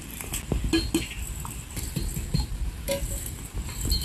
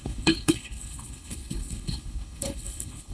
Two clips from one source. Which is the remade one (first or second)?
second